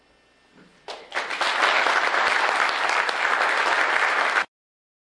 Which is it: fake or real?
real